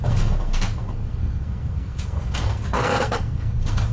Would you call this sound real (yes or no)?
no